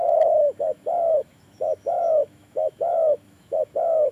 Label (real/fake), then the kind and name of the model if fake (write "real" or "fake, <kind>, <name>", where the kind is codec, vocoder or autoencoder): fake, autoencoder, DAC-VAE